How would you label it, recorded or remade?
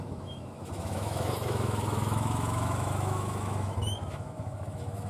remade